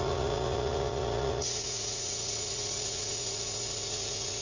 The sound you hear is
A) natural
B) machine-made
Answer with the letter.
B